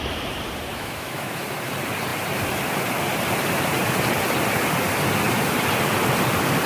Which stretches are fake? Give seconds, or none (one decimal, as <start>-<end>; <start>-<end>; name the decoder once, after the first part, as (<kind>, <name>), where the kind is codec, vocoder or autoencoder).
0.7-1.4 (autoencoder, DAC-VAE)